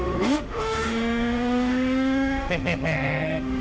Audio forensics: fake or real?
fake